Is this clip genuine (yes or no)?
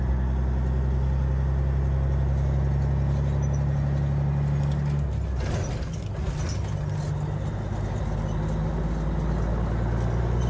yes